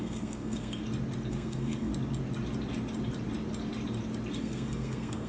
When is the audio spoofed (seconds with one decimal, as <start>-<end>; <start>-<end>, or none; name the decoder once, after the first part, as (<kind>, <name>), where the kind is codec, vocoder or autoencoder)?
0.0-0.8 (codec, SNAC); 1.3-1.9; 4.4-5.3